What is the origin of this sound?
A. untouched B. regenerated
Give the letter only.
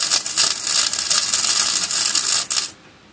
A